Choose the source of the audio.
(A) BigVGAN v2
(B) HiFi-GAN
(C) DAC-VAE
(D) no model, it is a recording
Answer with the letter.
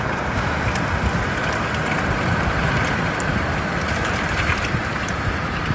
D